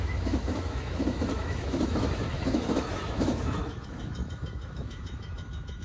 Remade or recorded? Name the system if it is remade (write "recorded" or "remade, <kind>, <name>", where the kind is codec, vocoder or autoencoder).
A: remade, autoencoder, DAC-VAE